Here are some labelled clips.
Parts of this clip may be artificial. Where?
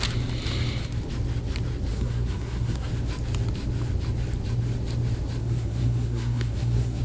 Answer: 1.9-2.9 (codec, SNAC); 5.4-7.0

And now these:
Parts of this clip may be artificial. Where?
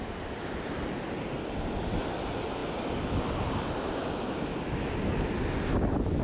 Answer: none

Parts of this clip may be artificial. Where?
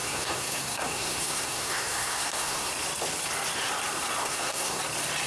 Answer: 0.0-2.7 (codec, SNAC); 4.2-4.8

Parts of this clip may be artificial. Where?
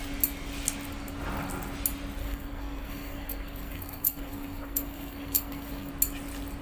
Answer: 2.2-5.9 (codec, SNAC)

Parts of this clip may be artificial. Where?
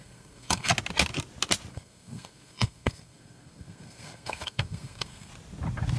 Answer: 0.0-0.7 (codec, SNAC); 1.7-5.3